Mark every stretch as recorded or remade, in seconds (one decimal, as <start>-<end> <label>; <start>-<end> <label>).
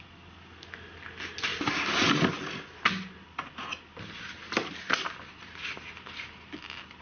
0.0-7.0 recorded